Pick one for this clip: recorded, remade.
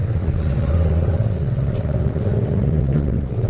remade